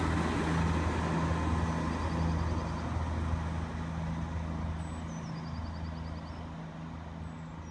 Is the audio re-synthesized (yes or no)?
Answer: no